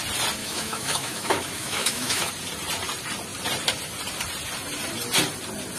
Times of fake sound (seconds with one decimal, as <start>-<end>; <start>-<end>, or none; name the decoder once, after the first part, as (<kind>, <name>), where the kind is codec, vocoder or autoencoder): 0.4-2.3 (autoencoder, DAC-VAE)